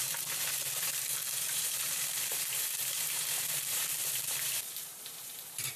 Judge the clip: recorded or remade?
remade